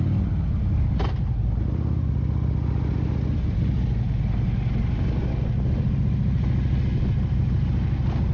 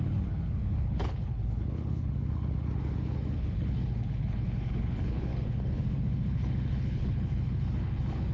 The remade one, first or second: second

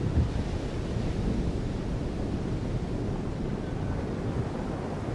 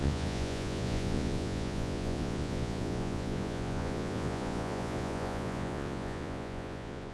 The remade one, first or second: second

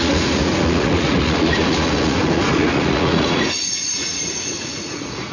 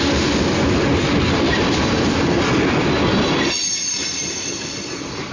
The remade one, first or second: first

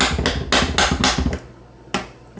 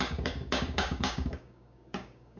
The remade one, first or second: second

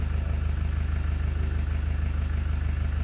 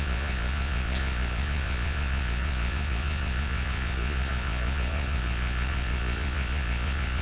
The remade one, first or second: second